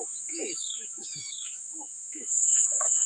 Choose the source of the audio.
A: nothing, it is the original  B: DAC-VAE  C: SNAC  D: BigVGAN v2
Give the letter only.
B